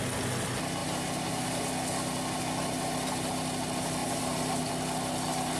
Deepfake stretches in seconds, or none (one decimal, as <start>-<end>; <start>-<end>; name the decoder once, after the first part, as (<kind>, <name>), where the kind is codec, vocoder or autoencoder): 0.8-1.7 (vocoder, BigVGAN v2); 4.0-4.7